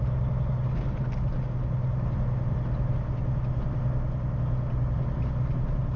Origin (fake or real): real